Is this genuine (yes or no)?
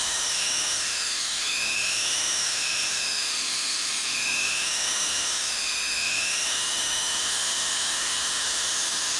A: no